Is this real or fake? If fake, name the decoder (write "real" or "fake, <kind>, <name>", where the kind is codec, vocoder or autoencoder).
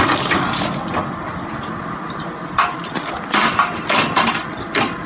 real